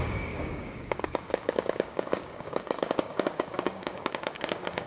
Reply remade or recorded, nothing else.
remade